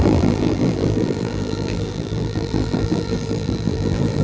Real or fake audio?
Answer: fake